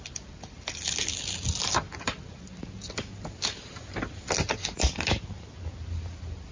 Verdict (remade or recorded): recorded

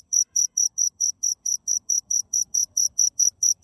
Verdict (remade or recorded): remade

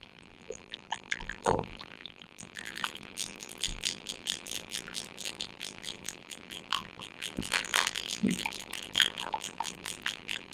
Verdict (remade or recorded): remade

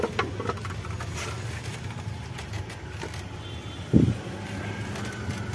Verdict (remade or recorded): recorded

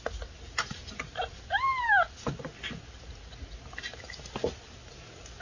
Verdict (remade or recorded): recorded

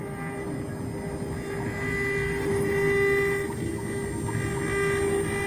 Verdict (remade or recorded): recorded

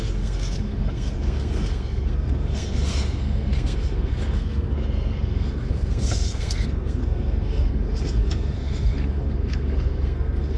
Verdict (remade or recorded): remade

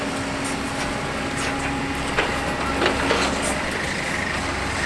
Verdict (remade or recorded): recorded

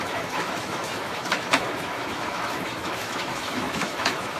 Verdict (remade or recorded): remade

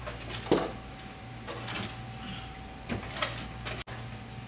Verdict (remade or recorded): recorded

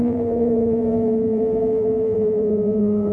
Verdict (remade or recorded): remade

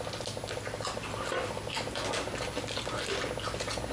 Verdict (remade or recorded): recorded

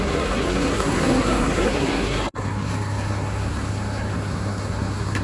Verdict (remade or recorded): remade